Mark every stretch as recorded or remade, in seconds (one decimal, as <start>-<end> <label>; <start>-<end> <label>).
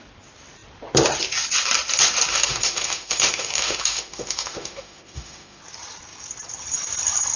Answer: 0.0-2.3 recorded; 2.3-5.6 remade; 5.6-7.4 recorded